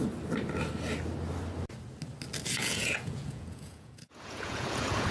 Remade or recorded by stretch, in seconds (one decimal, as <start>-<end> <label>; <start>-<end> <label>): 0.0-2.6 recorded; 2.6-5.1 remade